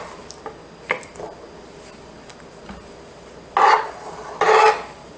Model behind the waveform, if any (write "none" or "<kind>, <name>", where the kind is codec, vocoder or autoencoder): none